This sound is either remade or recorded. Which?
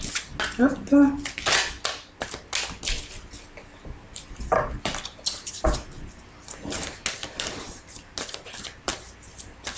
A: recorded